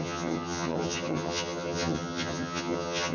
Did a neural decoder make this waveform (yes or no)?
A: yes